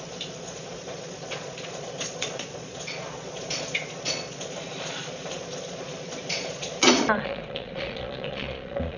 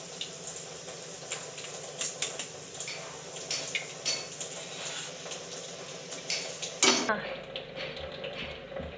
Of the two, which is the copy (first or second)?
first